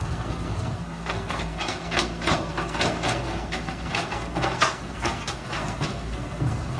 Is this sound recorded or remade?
remade